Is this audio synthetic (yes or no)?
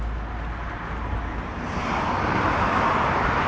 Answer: no